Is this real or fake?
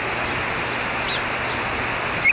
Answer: real